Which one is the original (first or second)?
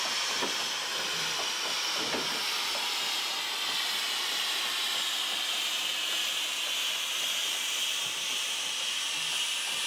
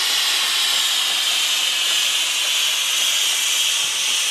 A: second